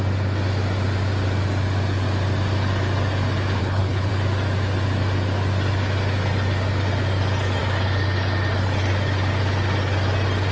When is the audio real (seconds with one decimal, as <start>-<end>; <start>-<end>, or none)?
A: 0.0-3.6; 4.1-10.5